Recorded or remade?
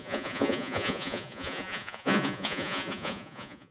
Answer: remade